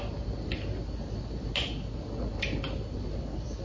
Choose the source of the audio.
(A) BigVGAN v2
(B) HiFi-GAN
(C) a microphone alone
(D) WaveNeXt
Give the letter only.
C